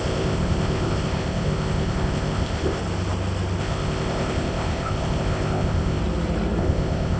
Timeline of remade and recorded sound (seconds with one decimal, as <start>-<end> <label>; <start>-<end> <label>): 0.0-2.8 remade; 2.8-3.6 recorded; 3.6-6.0 remade; 6.0-6.6 recorded; 6.6-7.2 remade